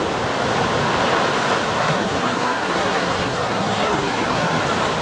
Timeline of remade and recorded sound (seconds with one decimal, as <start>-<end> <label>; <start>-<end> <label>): 0.0-1.8 recorded; 1.8-4.6 remade; 4.6-5.0 recorded